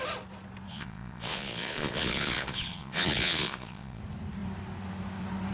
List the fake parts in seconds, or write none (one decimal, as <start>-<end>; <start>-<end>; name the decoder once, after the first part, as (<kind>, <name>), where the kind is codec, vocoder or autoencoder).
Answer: 0.7-4.0 (vocoder, Vocos)